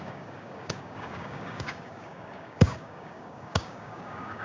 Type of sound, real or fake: fake